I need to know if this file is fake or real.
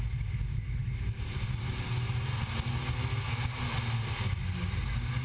real